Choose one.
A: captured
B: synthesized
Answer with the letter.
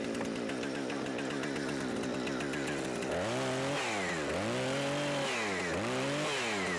A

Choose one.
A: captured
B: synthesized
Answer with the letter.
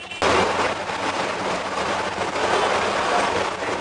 A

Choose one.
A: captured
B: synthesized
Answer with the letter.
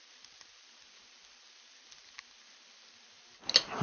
A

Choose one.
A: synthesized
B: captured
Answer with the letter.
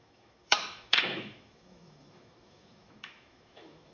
A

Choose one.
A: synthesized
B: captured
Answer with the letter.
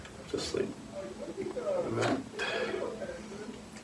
B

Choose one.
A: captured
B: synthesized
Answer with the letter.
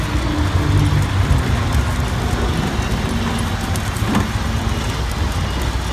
A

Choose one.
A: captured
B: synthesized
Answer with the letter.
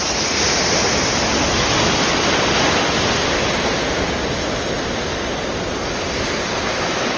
A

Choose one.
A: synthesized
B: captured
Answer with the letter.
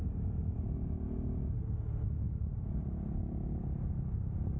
B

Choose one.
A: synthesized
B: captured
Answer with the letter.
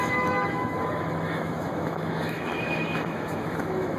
A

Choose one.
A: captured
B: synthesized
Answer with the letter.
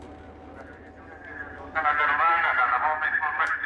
A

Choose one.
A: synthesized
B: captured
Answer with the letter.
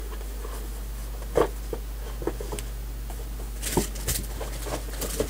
B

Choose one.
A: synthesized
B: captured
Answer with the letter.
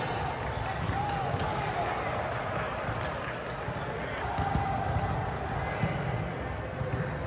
B